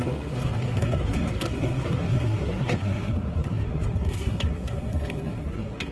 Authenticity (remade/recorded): remade